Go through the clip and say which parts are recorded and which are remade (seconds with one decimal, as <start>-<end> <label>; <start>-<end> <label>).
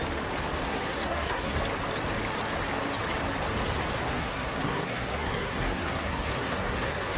0.0-0.6 recorded; 0.6-1.6 remade; 1.6-4.0 recorded; 4.0-7.2 remade